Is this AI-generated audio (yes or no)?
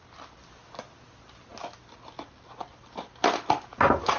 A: no